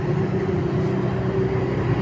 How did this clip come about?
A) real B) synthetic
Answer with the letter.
A